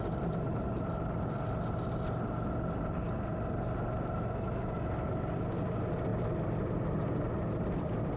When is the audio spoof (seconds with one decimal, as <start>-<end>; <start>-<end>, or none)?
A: none

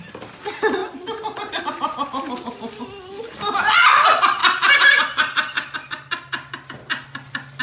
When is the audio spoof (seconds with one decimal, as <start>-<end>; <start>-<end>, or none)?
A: 4.4-6.7

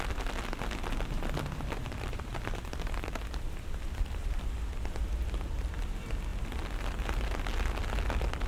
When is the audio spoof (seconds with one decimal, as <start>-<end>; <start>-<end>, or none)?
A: 1.8-4.4